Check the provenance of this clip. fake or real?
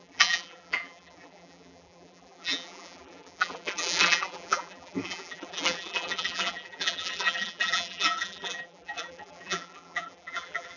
fake